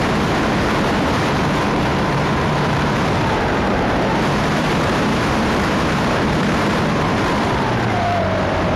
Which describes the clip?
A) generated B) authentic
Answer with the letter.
A